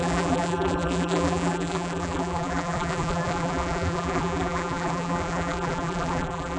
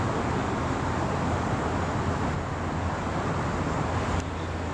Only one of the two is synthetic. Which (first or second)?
first